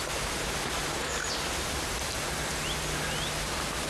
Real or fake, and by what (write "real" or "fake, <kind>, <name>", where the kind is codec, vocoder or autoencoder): real